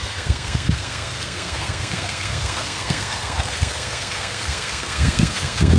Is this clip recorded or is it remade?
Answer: remade